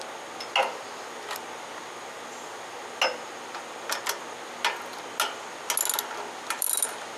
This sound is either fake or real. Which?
real